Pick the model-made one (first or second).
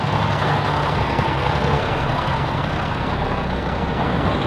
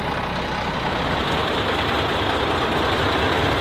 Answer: first